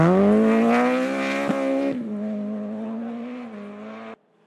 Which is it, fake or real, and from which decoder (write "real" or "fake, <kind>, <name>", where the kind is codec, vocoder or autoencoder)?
real